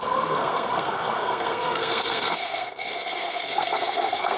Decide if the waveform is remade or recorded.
remade